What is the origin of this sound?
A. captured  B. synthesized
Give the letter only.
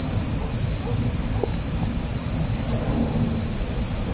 A